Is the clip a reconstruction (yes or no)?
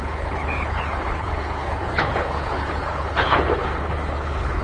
yes